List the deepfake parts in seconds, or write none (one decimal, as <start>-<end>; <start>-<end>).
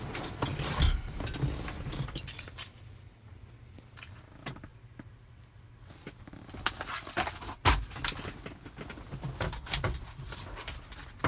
none